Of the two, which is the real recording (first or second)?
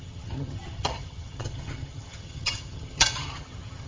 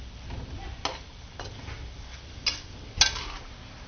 second